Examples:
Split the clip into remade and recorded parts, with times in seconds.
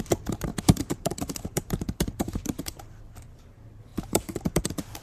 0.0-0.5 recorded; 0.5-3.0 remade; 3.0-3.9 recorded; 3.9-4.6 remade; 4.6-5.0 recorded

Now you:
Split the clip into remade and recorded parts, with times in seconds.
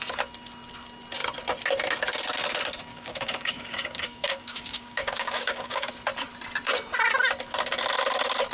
0.0-2.9 recorded; 2.9-5.9 remade; 5.9-8.5 recorded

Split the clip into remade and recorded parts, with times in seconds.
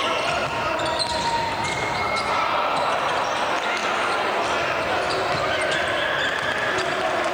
0.0-7.3 recorded